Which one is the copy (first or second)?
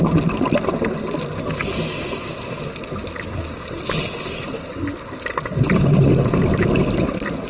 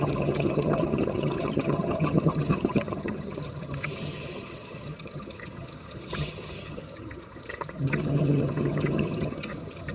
second